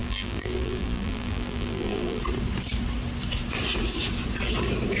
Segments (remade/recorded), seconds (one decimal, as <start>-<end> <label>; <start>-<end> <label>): 0.0-2.2 remade; 2.2-5.0 recorded